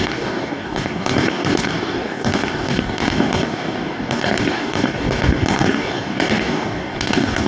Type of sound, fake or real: fake